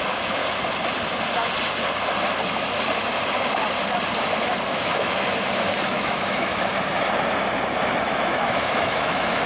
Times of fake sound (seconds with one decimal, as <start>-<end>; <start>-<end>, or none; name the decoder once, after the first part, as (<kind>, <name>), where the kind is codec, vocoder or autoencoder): 0.0-0.4 (autoencoder, DAC-VAE); 4.7-6.5; 8.0-9.5